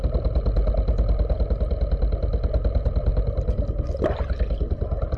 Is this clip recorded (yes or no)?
yes